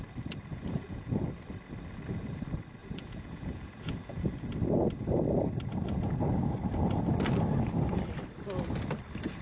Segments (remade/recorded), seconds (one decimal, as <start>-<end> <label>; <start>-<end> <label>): 0.0-0.5 recorded; 0.5-1.1 remade; 1.1-2.8 recorded; 2.8-4.5 remade; 4.5-9.4 recorded